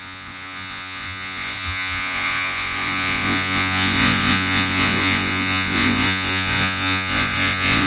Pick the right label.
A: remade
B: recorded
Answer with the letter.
A